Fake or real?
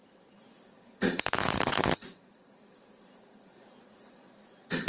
fake